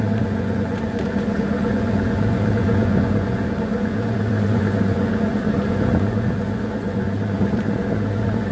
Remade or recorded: remade